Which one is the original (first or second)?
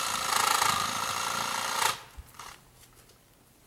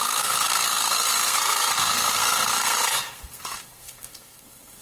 first